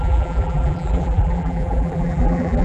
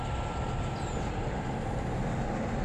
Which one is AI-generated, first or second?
first